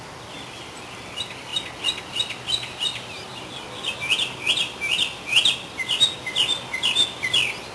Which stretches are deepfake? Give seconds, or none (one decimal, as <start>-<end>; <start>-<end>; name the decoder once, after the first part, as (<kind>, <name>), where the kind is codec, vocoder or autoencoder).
none